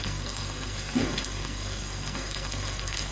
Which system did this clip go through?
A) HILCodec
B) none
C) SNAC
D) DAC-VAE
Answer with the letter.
C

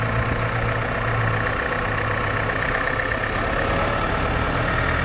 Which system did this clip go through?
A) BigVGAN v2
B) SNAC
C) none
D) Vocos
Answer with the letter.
C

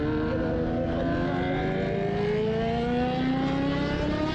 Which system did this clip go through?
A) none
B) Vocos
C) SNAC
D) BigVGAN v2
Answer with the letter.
A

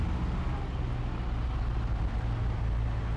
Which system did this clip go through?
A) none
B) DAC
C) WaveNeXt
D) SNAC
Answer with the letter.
A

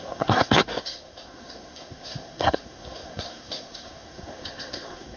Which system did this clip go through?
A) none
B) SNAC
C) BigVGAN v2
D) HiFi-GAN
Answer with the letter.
B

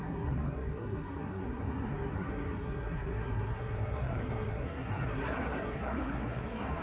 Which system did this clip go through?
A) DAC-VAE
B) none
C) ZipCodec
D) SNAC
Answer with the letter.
D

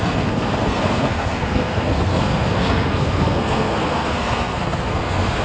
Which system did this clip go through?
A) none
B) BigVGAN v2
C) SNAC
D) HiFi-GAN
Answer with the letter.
C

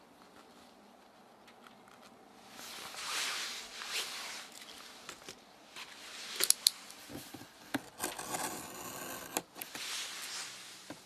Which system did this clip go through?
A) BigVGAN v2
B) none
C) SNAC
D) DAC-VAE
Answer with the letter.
B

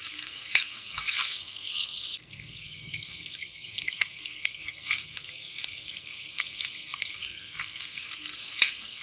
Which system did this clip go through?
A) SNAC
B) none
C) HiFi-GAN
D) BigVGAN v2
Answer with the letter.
A